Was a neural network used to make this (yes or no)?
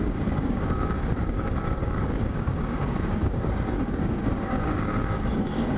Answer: yes